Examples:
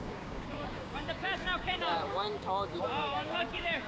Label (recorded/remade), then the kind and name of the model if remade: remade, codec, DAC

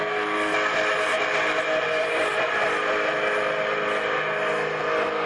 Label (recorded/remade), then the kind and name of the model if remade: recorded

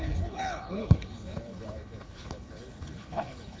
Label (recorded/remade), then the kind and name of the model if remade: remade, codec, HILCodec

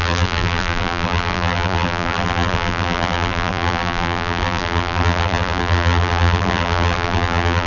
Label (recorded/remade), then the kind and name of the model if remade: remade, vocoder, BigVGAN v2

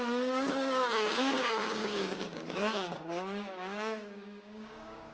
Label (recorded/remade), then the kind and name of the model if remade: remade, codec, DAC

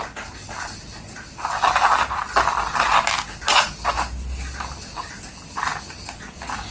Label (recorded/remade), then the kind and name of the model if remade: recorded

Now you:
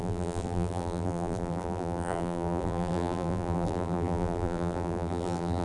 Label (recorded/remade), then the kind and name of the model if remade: remade, vocoder, BigVGAN v2